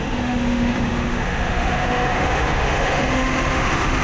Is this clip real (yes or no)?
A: no